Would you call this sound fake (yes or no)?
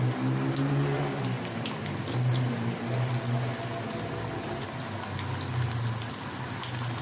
no